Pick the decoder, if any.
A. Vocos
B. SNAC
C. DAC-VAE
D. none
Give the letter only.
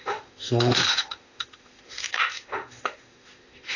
C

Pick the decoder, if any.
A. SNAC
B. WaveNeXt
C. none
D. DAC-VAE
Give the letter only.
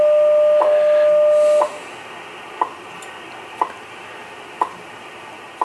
C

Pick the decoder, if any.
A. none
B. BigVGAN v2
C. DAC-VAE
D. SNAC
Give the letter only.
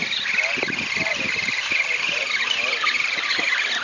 A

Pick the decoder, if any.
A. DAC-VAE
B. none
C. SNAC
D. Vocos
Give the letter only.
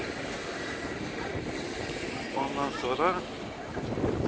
B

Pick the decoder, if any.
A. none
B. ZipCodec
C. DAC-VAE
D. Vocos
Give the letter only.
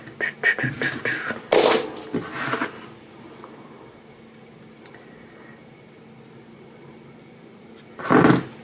A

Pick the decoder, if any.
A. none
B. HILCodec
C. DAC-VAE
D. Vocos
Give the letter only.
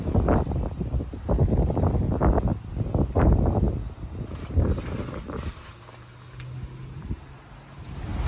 A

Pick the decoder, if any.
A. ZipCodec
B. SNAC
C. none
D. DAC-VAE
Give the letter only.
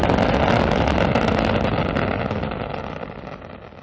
C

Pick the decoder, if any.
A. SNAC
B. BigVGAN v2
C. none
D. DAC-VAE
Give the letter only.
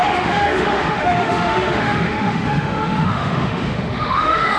D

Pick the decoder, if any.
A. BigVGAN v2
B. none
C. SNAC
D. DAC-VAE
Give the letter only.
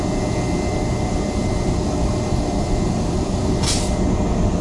B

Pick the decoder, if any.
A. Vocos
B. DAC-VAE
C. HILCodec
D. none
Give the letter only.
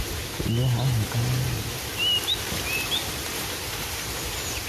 D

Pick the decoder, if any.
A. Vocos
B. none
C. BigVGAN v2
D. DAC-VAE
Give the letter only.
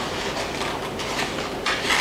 B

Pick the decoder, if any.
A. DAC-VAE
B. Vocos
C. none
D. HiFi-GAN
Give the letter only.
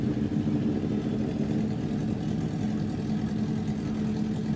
C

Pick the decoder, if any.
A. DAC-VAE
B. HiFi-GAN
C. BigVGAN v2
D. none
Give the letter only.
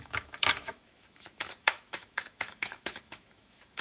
A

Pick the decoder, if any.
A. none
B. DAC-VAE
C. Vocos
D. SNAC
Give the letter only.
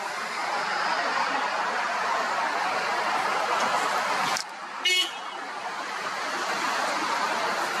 A